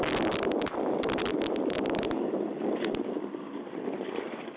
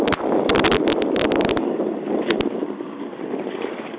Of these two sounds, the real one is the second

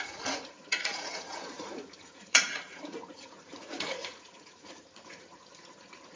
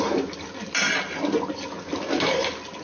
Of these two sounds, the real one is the second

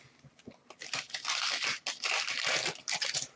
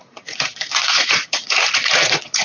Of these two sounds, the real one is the first